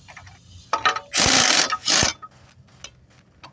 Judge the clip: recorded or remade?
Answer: recorded